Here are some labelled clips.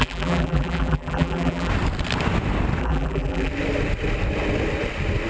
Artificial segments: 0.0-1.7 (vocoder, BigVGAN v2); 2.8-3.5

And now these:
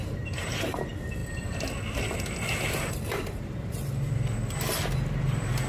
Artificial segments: 0.0-1.2 (vocoder, BigVGAN v2); 3.1-4.4; 5.2-5.7